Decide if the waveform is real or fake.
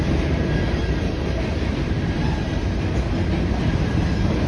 real